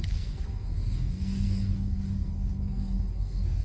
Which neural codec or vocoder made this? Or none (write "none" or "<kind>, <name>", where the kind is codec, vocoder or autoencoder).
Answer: codec, SNAC